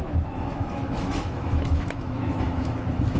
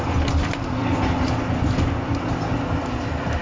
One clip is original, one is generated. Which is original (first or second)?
second